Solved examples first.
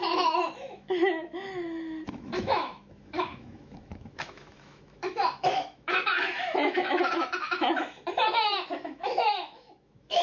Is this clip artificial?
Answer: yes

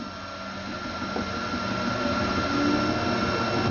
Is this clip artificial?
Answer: no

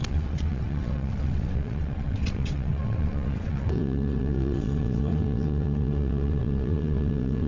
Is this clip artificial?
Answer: yes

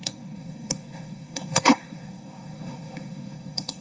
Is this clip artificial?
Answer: yes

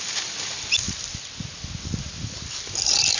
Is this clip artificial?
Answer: no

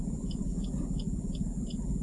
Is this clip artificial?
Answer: yes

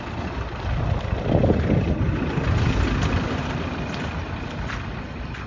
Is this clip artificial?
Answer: no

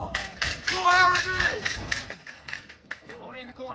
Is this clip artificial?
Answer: yes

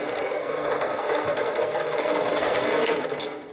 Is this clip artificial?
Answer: yes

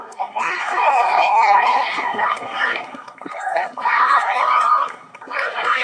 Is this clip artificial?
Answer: yes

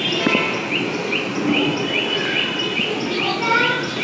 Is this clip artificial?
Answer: no